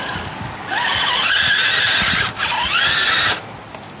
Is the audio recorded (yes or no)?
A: no